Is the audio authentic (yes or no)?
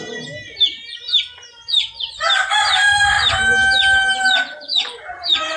yes